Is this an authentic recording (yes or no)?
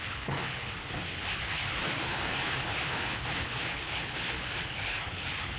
no